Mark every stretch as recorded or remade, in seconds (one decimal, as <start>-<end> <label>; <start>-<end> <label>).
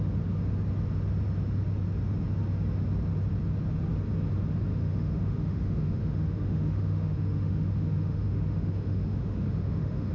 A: 0.0-4.7 recorded; 4.7-10.1 remade